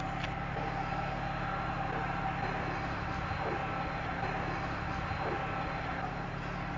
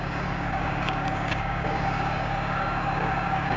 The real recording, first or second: first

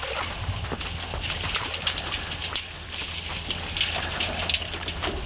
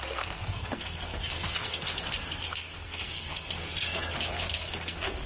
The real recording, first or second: first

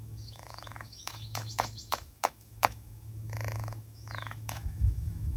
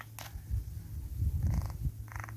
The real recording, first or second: second